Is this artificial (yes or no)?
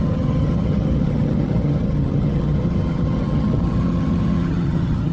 yes